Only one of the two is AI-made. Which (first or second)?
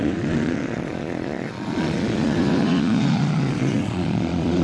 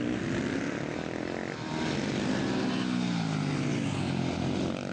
first